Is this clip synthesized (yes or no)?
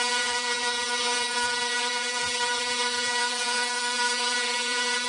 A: yes